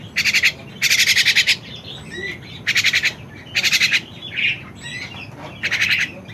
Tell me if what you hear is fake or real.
real